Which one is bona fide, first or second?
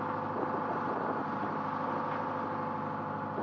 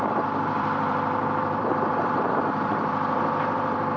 first